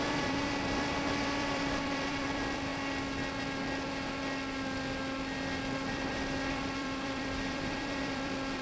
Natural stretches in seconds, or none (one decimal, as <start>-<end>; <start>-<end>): 2.7-5.9